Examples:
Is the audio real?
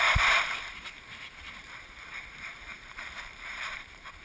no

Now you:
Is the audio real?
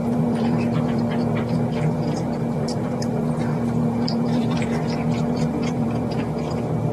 no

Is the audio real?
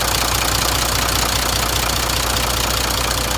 yes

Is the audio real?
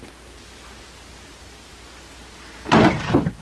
yes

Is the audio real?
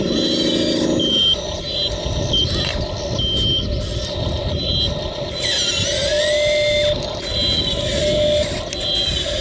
yes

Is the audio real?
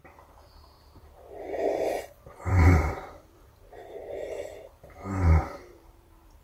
no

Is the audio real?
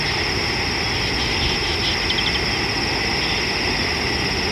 yes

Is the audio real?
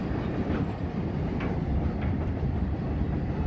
yes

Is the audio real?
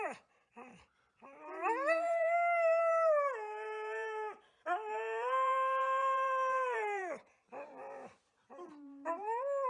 no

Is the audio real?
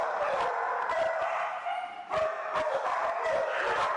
no